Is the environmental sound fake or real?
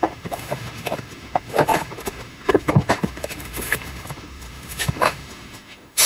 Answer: fake